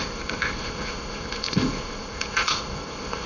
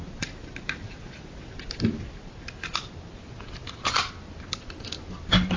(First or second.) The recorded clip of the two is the second